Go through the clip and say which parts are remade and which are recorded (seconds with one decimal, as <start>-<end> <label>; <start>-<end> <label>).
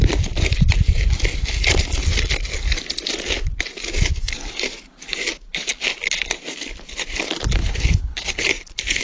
0.0-7.6 recorded; 7.6-9.0 remade